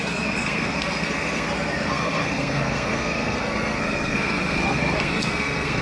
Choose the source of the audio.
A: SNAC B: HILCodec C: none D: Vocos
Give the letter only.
A